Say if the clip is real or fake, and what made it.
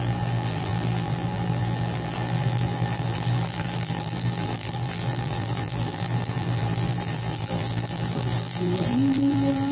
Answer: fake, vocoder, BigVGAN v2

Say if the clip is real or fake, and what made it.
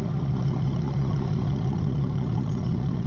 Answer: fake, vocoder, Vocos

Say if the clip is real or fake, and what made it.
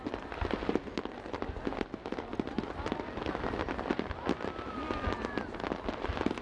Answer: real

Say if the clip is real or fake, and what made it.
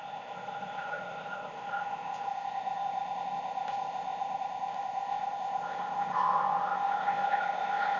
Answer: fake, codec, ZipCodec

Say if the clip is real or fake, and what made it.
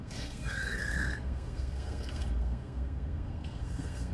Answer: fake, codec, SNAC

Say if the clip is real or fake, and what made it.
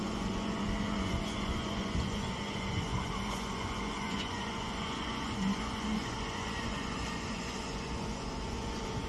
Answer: fake, vocoder, Vocos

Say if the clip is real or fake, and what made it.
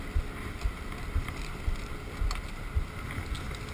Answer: real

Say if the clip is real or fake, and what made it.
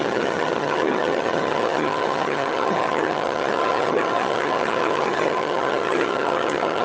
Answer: fake, vocoder, HiFi-GAN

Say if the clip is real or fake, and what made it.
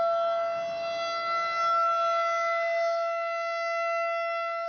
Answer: real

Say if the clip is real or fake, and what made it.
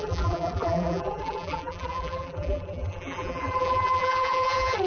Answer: fake, vocoder, BigVGAN v2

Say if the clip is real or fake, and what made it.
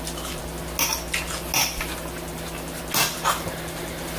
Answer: real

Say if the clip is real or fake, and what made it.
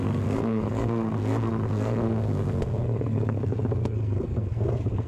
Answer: fake, codec, SNAC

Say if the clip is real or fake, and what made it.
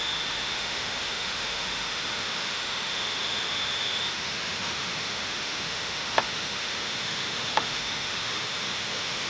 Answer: fake, autoencoder, DAC-VAE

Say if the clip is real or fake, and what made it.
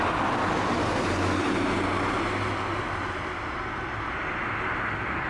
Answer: real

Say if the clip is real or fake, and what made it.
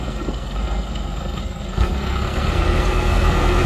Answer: fake, codec, SNAC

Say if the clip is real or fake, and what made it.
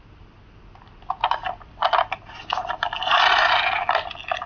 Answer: real